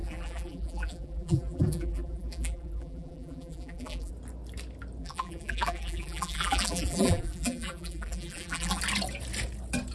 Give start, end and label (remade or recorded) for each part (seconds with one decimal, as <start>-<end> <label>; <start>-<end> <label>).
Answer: 0.0-4.1 remade; 4.1-5.0 recorded; 5.0-8.8 remade; 8.8-9.9 recorded